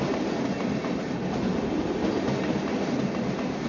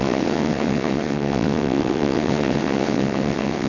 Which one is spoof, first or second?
second